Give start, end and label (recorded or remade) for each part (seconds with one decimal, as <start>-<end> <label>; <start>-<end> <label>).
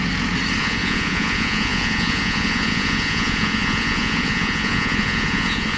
0.0-0.6 recorded; 0.6-5.8 remade